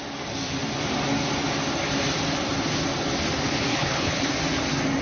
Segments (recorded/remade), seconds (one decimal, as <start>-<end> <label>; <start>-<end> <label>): 0.0-3.7 recorded; 3.7-4.3 remade; 4.3-5.0 recorded

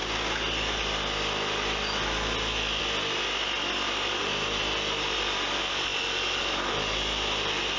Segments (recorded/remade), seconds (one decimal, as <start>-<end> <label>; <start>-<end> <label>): 0.0-7.8 recorded

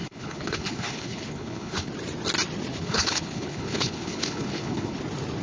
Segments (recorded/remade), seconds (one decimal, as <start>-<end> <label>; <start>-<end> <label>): 0.0-1.9 remade; 1.9-2.7 recorded; 2.7-5.0 remade; 5.0-5.4 recorded

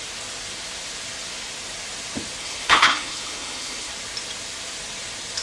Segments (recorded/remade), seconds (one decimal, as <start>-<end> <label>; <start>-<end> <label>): 0.0-2.4 recorded; 2.4-3.9 remade; 3.9-5.4 recorded

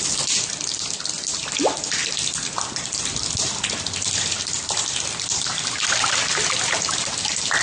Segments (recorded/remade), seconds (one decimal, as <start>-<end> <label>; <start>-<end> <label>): 0.0-7.6 recorded